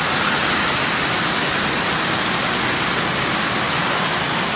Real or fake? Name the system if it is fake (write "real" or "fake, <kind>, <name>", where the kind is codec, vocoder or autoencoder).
real